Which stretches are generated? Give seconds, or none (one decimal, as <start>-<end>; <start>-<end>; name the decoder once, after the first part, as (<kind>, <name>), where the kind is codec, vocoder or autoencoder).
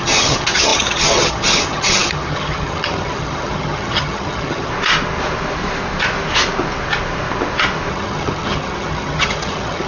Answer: 0.0-4.7 (vocoder, HiFi-GAN); 7.9-9.9